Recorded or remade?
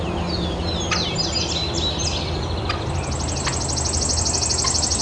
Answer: recorded